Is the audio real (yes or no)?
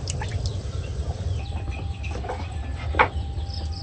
no